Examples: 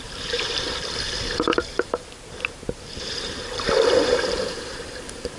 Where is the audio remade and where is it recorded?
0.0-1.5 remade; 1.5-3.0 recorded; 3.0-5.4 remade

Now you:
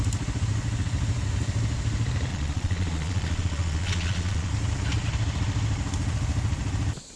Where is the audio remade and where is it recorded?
0.0-2.3 recorded; 2.3-4.5 remade; 4.5-7.2 recorded

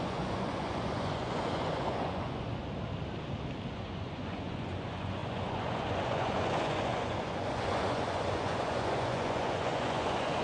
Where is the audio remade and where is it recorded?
0.0-2.6 remade; 2.6-3.7 recorded; 3.7-10.4 remade

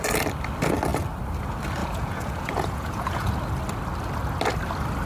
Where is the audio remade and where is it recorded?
0.0-1.8 recorded; 1.8-3.3 remade; 3.3-5.1 recorded

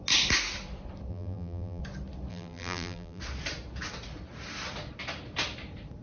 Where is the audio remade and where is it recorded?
0.0-1.1 recorded; 1.1-1.8 remade; 1.8-2.3 recorded; 2.3-3.2 remade; 3.2-6.0 recorded